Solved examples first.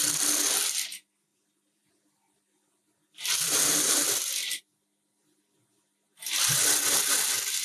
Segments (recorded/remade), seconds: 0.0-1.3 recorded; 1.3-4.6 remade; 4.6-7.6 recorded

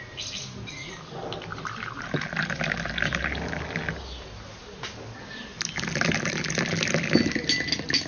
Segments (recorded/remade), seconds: 0.0-1.5 recorded; 1.5-2.9 remade; 2.9-8.1 recorded

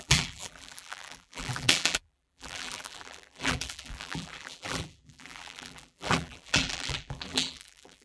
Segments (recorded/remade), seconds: 0.0-8.0 remade

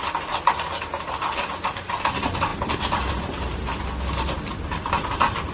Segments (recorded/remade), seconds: 0.0-5.5 recorded

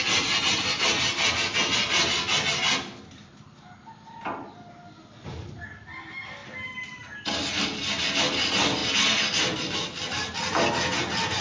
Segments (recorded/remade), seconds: 0.0-6.4 recorded; 6.4-7.0 remade; 7.0-11.4 recorded

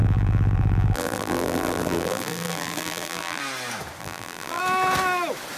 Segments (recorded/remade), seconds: 0.0-3.4 remade; 3.4-4.0 recorded; 4.0-4.6 remade; 4.6-5.6 recorded

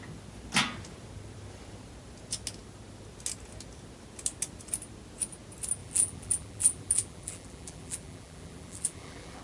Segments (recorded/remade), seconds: 0.0-5.8 recorded; 5.8-9.4 remade

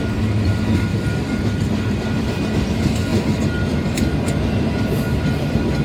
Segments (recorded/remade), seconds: 0.0-0.9 recorded; 0.9-2.3 remade; 2.3-5.8 recorded